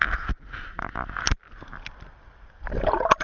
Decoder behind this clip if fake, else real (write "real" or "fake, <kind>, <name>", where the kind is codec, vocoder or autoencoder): real